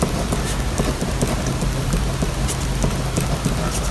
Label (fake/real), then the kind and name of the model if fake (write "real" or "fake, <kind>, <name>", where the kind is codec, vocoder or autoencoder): real